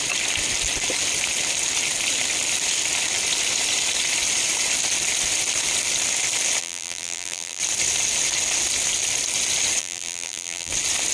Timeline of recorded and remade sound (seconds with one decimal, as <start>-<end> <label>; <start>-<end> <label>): 0.0-6.6 recorded; 6.6-7.6 remade; 7.6-9.8 recorded; 9.8-10.7 remade; 10.7-11.1 recorded